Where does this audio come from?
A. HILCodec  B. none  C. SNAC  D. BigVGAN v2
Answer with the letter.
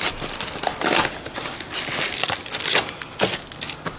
B